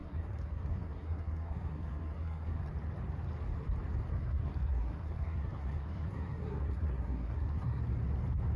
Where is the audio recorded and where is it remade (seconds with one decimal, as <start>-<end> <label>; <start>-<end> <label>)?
0.0-2.7 remade; 2.7-4.1 recorded; 4.1-7.8 remade; 7.8-8.6 recorded